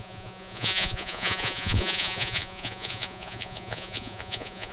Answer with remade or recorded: remade